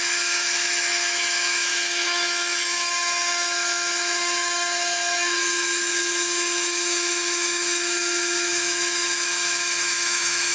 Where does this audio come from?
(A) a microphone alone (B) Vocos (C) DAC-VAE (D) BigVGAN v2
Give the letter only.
C